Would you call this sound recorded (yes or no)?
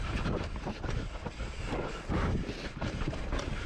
yes